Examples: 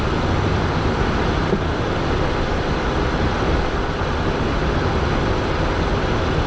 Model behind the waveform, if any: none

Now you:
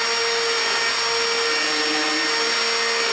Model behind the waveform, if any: none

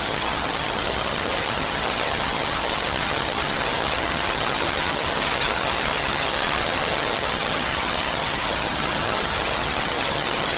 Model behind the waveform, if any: vocoder, HiFi-GAN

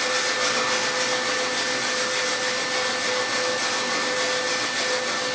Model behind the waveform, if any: none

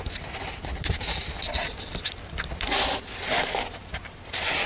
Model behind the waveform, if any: none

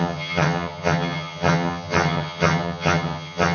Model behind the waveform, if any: vocoder, HiFi-GAN